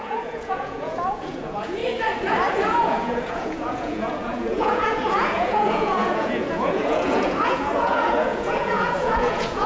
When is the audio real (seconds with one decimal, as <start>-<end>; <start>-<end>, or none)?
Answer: 1.8-2.8